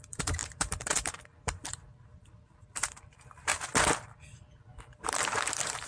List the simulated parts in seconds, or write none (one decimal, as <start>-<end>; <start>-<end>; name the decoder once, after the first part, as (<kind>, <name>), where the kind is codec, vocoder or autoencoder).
0.0-3.5 (vocoder, BigVGAN v2); 4.8-5.9